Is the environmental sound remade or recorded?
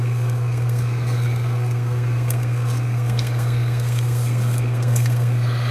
remade